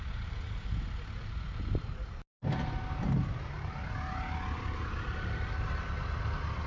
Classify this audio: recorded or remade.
recorded